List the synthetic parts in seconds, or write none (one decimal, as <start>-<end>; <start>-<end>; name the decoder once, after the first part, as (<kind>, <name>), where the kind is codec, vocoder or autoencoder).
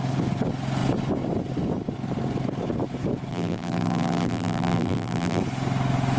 3.3-5.4 (vocoder, BigVGAN v2)